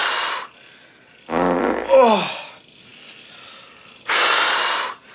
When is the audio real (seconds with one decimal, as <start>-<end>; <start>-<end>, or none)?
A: 0.0-5.1